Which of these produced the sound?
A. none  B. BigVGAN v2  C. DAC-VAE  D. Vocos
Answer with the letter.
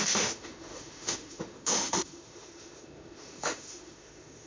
C